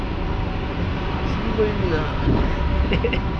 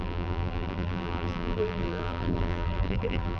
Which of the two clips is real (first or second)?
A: first